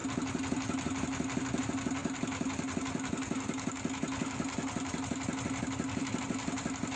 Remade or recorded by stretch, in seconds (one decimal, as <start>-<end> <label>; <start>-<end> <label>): 0.0-7.0 recorded